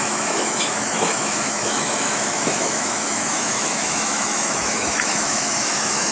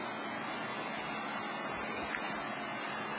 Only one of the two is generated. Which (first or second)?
first